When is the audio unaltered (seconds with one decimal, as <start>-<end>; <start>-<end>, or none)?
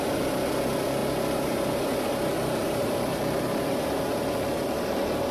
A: 0.0-2.6